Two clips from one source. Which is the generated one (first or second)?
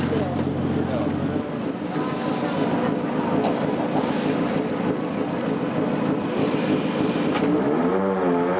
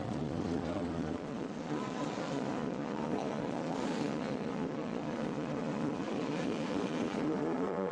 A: second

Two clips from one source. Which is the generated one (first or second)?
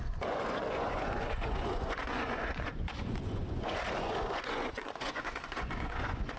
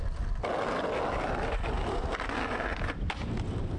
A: first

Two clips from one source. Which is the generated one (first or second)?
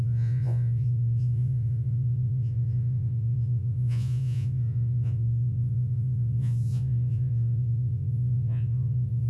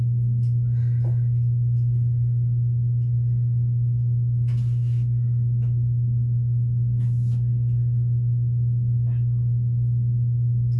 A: first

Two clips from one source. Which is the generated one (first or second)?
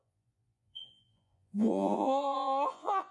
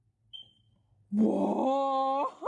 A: first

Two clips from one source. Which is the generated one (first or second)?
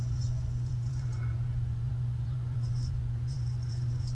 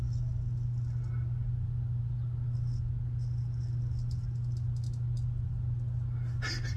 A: first